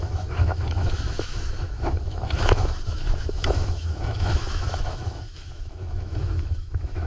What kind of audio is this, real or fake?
fake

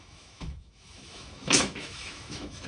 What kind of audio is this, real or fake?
fake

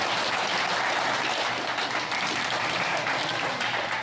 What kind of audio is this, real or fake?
real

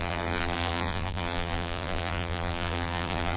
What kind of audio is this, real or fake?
fake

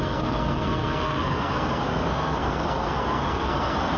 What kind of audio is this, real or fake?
fake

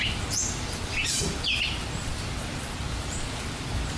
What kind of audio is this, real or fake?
real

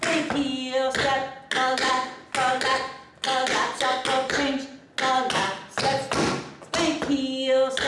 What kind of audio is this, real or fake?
real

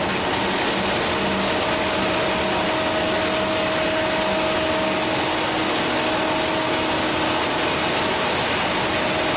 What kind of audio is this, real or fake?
real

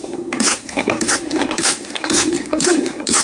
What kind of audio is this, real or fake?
fake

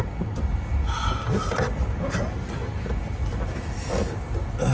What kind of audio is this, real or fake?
real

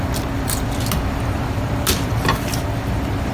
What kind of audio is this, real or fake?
real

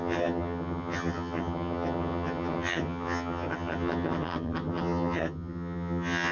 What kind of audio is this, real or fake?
fake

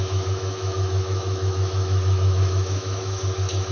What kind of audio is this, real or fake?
fake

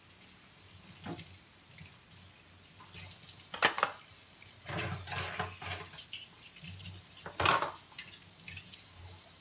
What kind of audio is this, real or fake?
real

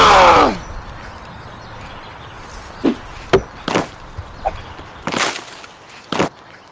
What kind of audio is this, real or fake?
real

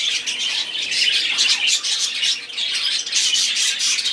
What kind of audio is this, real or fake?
real